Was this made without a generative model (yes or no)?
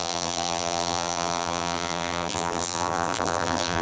no